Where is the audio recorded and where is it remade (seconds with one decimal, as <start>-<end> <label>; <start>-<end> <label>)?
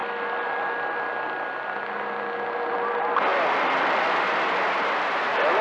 0.0-3.3 recorded; 3.3-4.5 remade; 4.5-5.6 recorded